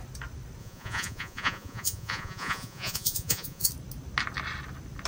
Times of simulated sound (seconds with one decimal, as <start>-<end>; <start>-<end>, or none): 0.6-3.7

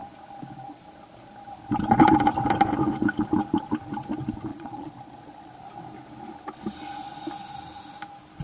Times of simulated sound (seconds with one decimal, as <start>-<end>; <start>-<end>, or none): 4.5-5.5

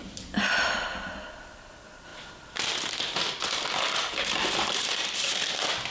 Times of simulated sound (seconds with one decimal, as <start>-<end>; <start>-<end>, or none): none

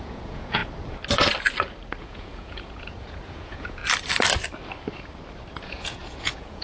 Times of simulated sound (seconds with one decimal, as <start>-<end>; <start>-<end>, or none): 0.0-0.6; 2.0-3.8; 5.6-6.6

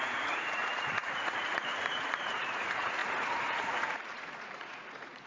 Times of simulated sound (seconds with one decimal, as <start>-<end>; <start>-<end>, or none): 0.0-5.3